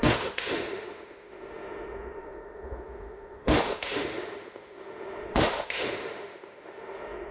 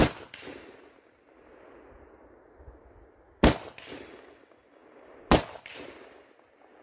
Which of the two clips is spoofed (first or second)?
first